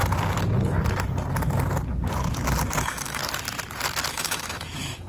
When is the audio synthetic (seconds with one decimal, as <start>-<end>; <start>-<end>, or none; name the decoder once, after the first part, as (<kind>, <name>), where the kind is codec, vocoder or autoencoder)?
2.8-3.2 (autoencoder, DAC-VAE); 4.1-5.1